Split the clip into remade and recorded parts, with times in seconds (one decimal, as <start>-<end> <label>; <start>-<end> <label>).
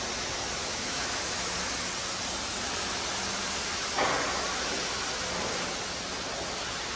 0.0-0.6 recorded; 0.6-1.4 remade; 1.4-7.0 recorded